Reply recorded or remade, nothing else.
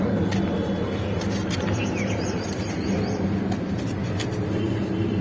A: recorded